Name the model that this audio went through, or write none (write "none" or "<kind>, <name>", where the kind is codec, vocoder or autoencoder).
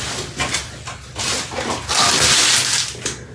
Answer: none